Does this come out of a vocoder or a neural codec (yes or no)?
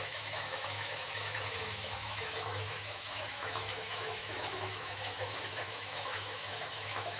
yes